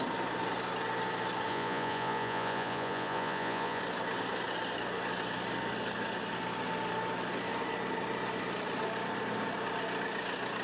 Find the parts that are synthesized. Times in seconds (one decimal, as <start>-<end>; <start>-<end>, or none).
1.5-3.8

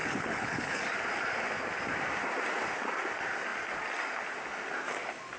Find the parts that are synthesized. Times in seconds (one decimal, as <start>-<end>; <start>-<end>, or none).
0.0-0.8